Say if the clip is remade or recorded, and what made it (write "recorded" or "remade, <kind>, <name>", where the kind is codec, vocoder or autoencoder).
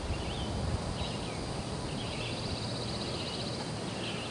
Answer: recorded